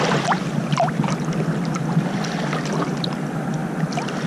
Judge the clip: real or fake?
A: real